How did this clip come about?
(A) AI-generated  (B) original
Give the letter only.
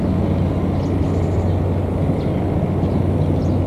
B